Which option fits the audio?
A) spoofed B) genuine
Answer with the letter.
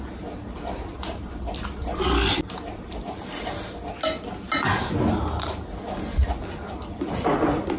B